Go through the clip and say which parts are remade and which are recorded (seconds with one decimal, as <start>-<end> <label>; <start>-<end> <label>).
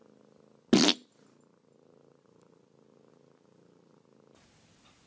0.0-5.1 recorded